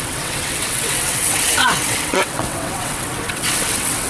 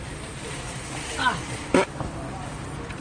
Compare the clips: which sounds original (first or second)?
second